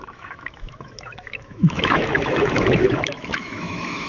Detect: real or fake fake